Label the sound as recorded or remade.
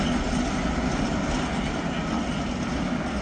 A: recorded